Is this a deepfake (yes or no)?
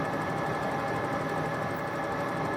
no